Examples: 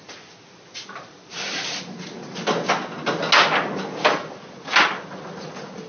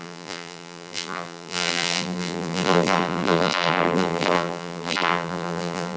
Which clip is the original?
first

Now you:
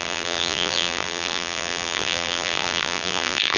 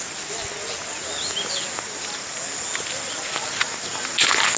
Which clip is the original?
second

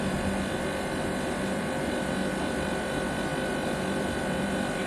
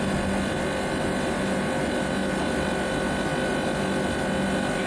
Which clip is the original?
second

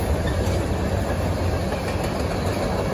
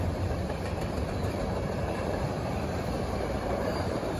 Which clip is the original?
first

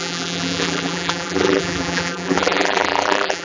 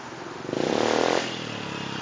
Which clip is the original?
second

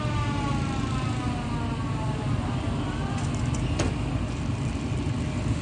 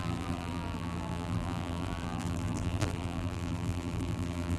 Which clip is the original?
first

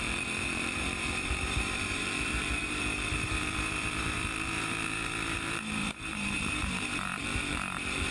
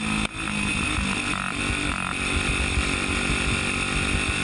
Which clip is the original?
second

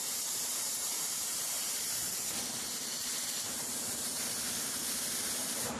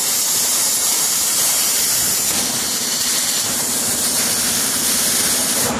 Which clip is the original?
second